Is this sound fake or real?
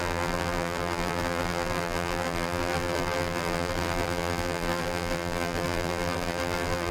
fake